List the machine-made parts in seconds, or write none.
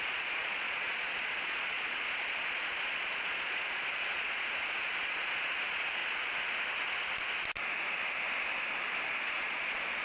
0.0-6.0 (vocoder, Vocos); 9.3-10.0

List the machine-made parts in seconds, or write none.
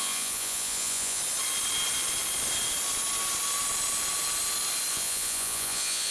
0.0-1.2 (vocoder, Vocos); 4.9-6.1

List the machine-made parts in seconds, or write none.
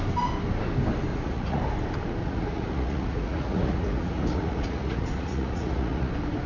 1.1-1.6 (vocoder, Vocos); 2.2-6.1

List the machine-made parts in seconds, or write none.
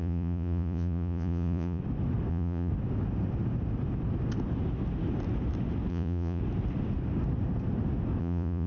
0.0-1.8 (vocoder, Vocos); 2.3-2.7; 5.9-6.4; 8.2-8.7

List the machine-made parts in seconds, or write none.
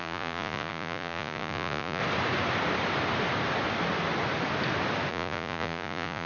0.0-2.0 (vocoder, Vocos); 5.1-6.3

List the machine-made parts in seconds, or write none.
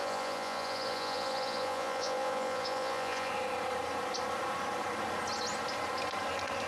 0.0-3.3 (vocoder, Vocos)